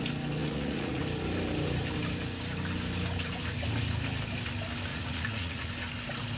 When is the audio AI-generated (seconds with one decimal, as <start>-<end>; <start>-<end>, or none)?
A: 0.4-1.0; 4.9-5.7